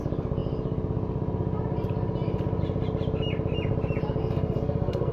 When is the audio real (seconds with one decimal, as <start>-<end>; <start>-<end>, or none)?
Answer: 0.0-4.2